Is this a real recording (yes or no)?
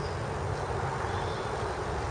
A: yes